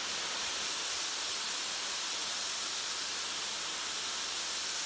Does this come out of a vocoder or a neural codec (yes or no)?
no